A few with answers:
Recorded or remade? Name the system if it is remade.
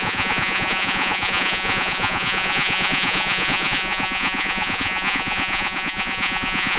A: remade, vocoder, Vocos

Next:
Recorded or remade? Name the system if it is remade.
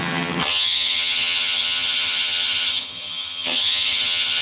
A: remade, vocoder, HiFi-GAN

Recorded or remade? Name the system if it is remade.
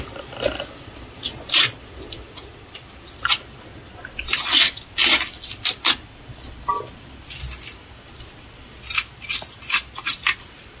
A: recorded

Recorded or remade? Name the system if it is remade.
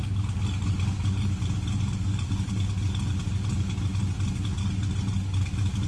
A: recorded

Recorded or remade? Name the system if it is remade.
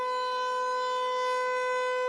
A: recorded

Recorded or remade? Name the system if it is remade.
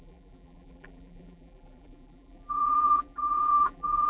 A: remade, vocoder, BigVGAN v2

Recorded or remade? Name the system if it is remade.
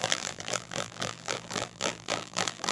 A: remade, vocoder, BigVGAN v2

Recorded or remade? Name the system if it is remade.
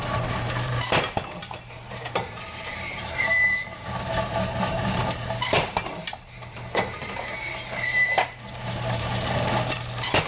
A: remade, vocoder, BigVGAN v2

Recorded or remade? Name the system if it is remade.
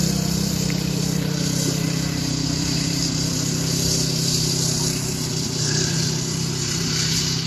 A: remade, vocoder, BigVGAN v2